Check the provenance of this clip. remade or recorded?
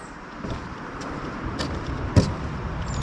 remade